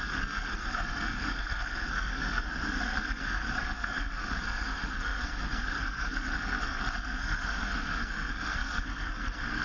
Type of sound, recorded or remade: remade